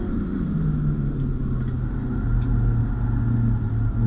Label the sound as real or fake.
real